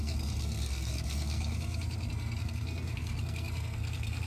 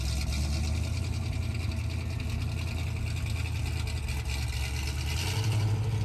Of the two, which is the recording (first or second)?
second